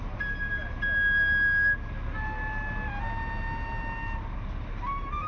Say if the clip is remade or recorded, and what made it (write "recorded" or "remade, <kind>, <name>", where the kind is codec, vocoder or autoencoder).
recorded